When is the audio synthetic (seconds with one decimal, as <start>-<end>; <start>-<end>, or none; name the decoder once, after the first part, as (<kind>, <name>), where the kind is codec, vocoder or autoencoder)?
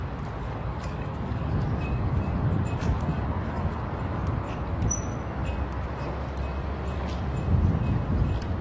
0.4-2.6 (codec, DAC); 3.1-3.8